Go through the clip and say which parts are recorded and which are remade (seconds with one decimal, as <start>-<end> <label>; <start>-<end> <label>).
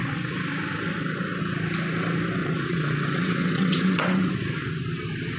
0.0-2.4 recorded; 2.4-4.3 remade; 4.3-5.4 recorded